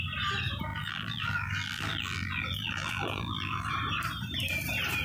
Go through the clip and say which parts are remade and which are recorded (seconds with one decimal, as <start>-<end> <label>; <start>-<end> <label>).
0.0-0.7 recorded; 0.7-3.7 remade; 3.7-5.0 recorded